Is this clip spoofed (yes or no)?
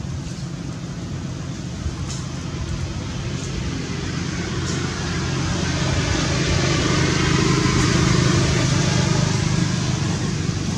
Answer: no